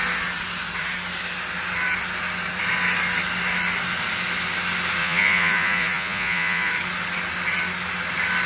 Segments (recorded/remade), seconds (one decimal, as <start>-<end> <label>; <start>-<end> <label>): 0.0-5.0 recorded; 5.0-6.7 remade; 6.7-8.5 recorded